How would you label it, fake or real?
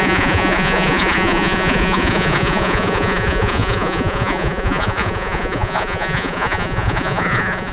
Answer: fake